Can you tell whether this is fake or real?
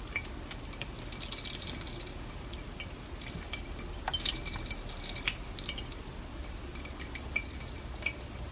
real